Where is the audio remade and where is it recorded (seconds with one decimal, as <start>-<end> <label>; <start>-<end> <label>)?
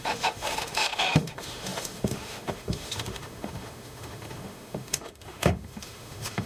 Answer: 0.0-6.5 remade